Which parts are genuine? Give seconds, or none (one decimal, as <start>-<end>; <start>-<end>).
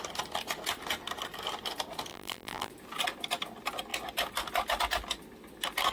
0.0-2.1; 2.7-5.9